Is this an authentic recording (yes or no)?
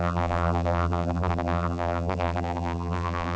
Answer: no